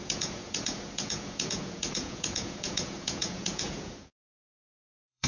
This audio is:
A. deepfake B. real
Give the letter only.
A